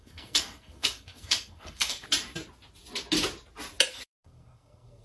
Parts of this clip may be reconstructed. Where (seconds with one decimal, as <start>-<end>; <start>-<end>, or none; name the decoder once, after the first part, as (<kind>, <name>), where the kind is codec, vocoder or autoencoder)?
0.0-2.0 (codec, SNAC); 3.9-5.0